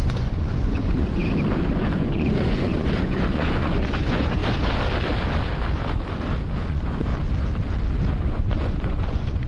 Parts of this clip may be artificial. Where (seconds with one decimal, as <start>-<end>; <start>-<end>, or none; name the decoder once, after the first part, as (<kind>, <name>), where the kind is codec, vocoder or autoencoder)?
0.0-1.2 (vocoder, Vocos); 1.7-4.4; 6.6-7.1; 8.3-9.5